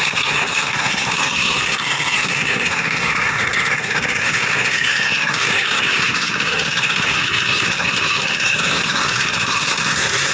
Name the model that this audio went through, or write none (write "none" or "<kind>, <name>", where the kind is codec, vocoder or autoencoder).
codec, SNAC